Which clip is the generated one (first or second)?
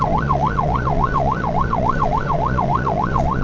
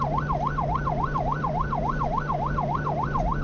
first